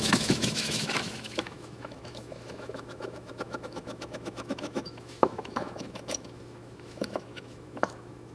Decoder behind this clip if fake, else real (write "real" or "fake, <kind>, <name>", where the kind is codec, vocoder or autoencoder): fake, autoencoder, DAC-VAE